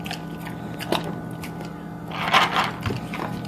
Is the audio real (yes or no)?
yes